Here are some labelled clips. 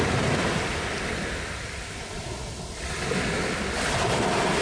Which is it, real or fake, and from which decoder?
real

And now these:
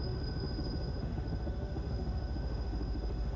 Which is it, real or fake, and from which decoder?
fake, autoencoder, DAC-VAE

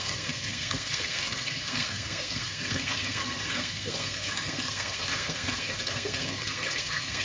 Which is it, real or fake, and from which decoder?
fake, codec, SNAC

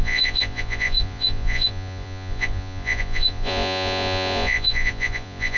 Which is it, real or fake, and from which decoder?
fake, vocoder, Vocos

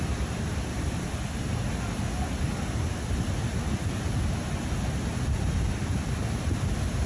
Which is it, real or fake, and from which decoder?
real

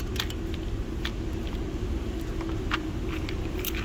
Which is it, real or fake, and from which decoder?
real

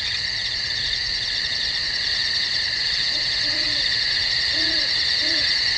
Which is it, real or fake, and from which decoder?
fake, vocoder, Vocos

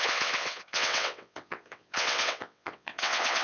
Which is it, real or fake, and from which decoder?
fake, vocoder, WaveNeXt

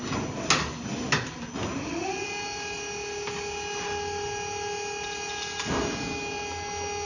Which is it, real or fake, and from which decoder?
real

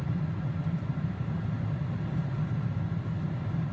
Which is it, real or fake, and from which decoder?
real